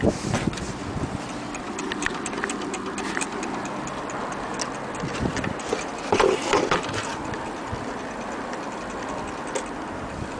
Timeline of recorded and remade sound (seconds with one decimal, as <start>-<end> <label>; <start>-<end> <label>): 0.0-10.4 recorded